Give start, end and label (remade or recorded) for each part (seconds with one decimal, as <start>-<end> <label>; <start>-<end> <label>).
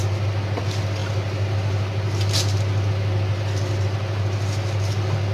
0.0-5.3 recorded